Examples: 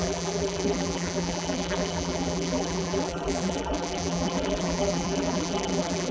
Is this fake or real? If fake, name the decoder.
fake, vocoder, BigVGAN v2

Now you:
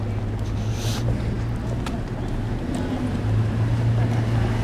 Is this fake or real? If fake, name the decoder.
real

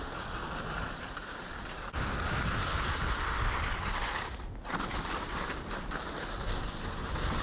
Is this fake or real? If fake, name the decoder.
real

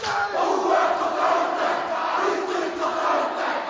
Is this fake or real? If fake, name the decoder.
fake, vocoder, BigVGAN v2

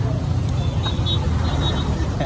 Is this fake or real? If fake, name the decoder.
real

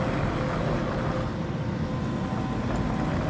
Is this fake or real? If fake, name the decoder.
real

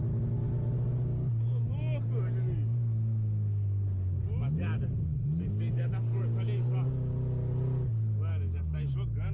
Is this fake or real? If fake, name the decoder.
real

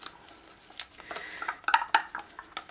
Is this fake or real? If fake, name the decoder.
real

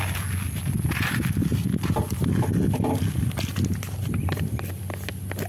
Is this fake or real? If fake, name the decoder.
real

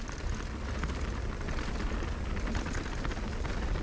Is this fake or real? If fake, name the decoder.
real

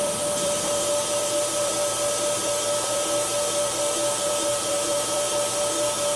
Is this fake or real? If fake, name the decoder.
fake, vocoder, BigVGAN v2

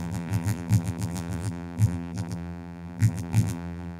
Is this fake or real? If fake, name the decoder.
fake, vocoder, BigVGAN v2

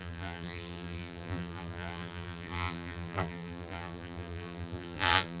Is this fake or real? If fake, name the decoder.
fake, vocoder, BigVGAN v2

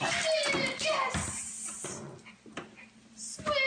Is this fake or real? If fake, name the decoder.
fake, vocoder, BigVGAN v2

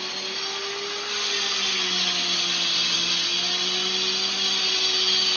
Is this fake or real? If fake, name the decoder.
real